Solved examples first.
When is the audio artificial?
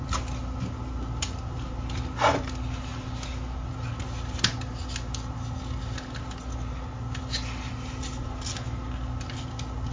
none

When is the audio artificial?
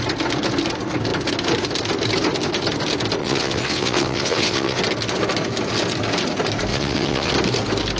3.2-4.8 (vocoder, WaveNeXt); 6.7-7.3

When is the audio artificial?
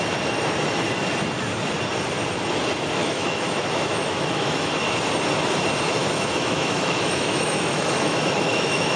3.0-4.7 (autoencoder, DAC-VAE); 6.0-9.0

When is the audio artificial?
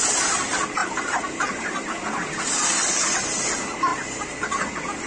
0.8-1.8 (vocoder, BigVGAN v2); 3.9-5.1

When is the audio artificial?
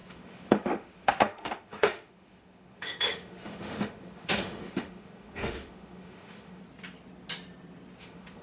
0.0-6.6 (autoencoder, DAC-VAE); 8.0-8.4